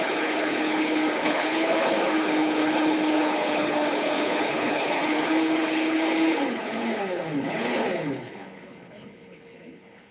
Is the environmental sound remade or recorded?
remade